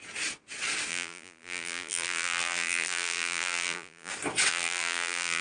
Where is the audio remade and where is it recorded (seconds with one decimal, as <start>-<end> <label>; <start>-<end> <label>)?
0.0-0.9 recorded; 0.9-4.1 remade; 4.1-4.5 recorded; 4.5-5.4 remade